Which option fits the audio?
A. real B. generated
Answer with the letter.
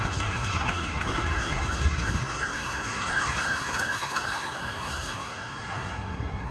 B